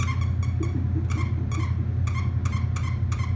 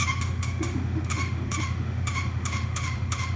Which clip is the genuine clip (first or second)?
first